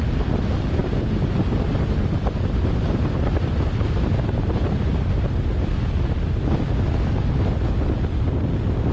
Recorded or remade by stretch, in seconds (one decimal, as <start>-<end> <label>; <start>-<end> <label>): 0.0-0.8 recorded; 0.8-4.9 remade; 4.9-8.9 recorded